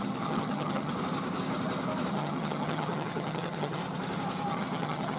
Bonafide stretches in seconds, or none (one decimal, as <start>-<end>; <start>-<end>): 0.9-2.1; 3.8-4.5